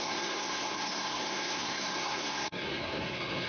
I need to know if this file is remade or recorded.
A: remade